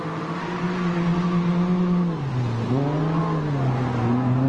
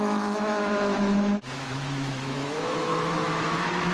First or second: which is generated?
second